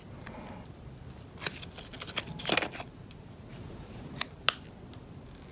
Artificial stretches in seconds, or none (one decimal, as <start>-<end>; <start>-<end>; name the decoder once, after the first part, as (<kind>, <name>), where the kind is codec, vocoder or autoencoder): 3.5-4.2 (vocoder, BigVGAN v2)